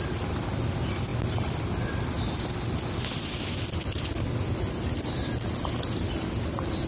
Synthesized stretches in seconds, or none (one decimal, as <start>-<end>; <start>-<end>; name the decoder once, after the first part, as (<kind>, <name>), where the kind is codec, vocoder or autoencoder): 1.1-1.6 (vocoder, BigVGAN v2)

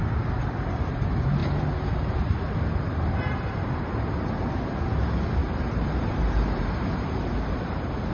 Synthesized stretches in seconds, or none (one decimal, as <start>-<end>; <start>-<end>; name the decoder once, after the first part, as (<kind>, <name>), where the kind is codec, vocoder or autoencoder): 1.4-3.8 (vocoder, BigVGAN v2); 5.4-8.1

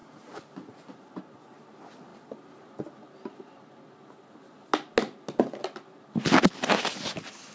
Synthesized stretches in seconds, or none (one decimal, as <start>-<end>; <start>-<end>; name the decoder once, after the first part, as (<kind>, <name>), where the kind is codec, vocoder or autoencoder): 0.0-1.2 (vocoder, BigVGAN v2)

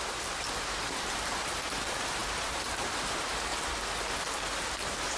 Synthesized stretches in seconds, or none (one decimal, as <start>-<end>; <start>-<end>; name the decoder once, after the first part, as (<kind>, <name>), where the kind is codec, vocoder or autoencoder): 0.0-3.5 (vocoder, BigVGAN v2); 4.2-5.2